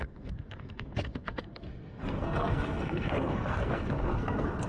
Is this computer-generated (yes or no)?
yes